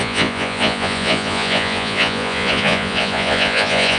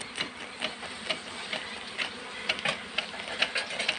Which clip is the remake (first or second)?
first